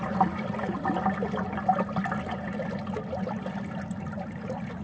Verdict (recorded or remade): recorded